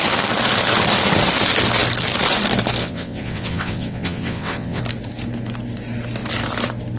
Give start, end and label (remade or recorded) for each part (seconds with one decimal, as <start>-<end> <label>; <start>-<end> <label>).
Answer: 0.0-2.8 recorded; 2.8-4.8 remade; 4.8-7.0 recorded